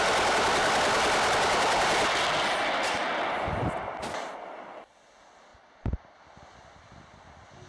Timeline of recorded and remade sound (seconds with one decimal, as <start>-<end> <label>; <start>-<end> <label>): 0.0-7.7 recorded